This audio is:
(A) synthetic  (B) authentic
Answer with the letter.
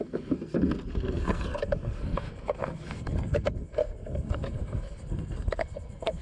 A